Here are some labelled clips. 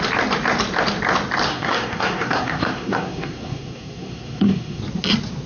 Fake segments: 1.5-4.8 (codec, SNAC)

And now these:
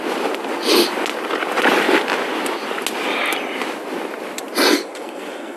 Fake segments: 4.7-5.6 (codec, SNAC)

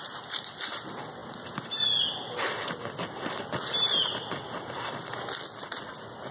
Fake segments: none

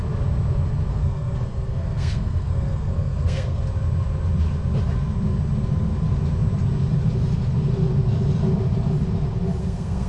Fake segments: 0.9-3.6 (codec, SNAC); 9.6-10.1

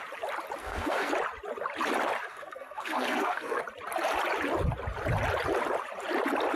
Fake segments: 0.6-1.1 (codec, SNAC); 2.3-3.6